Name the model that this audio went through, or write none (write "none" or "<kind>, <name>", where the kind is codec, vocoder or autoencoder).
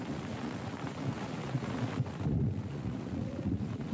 vocoder, Vocos